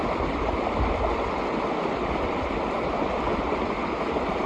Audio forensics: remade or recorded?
recorded